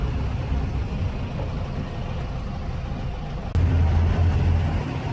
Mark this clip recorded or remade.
recorded